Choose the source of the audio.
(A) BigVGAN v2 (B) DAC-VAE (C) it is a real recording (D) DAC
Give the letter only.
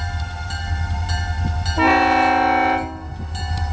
C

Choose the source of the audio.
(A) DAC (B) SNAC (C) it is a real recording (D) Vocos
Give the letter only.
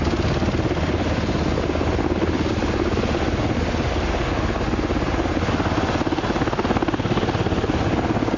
C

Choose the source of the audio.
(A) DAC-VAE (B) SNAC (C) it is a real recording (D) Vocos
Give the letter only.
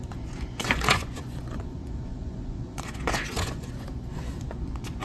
D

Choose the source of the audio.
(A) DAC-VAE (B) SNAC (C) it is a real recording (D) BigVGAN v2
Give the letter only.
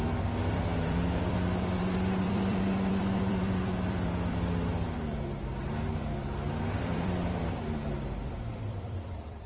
D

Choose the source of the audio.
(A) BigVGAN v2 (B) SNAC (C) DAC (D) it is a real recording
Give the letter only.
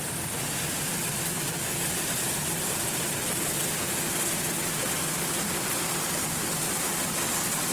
D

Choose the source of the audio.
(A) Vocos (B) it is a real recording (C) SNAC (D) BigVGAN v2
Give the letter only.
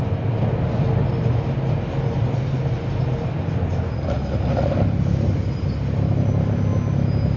B